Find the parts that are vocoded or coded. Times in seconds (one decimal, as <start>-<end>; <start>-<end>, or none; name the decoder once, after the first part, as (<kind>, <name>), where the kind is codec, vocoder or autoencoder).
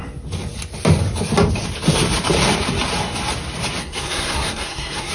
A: 3.8-5.1 (codec, SNAC)